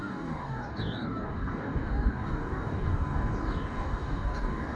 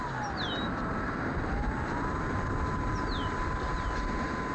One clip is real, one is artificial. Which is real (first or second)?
second